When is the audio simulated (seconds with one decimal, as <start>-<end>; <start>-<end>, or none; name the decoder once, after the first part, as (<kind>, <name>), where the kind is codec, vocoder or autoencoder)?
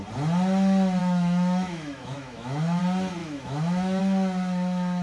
1.0-2.8 (autoencoder, DAC-VAE); 3.2-4.0